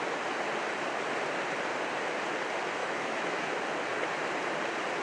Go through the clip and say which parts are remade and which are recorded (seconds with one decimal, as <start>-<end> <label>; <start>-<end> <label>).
0.0-2.8 recorded; 2.8-3.5 remade; 3.5-5.0 recorded